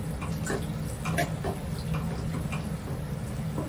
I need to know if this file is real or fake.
real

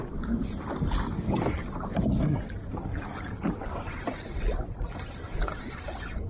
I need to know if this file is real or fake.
real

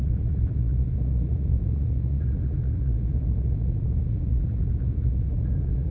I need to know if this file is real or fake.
fake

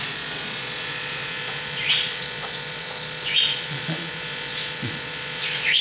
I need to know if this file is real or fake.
fake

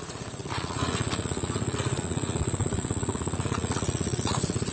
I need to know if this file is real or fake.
fake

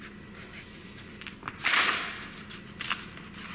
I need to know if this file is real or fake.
real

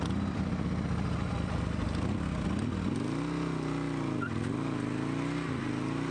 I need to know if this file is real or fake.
real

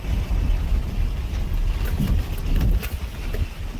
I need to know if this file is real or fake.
real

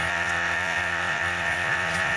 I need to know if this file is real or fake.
fake